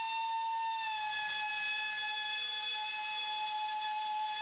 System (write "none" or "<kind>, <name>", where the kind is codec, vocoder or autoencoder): none